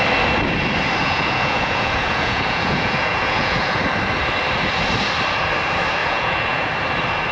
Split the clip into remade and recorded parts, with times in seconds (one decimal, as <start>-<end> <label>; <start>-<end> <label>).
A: 0.0-1.0 recorded; 1.0-3.8 remade; 3.8-6.0 recorded; 6.0-6.7 remade; 6.7-7.3 recorded